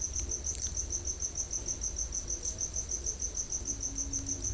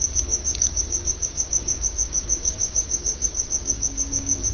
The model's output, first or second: second